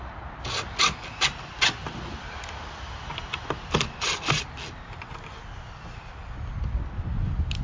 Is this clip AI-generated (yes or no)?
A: no